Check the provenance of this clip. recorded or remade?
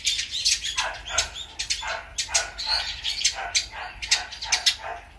recorded